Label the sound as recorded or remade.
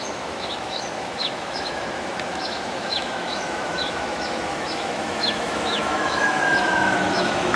remade